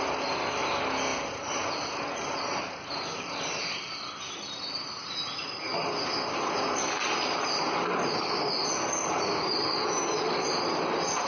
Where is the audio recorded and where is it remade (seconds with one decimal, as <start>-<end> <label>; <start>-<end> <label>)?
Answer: 0.0-11.3 recorded